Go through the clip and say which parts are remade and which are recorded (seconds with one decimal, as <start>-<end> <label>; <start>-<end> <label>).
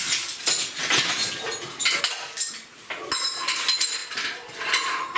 0.0-5.2 recorded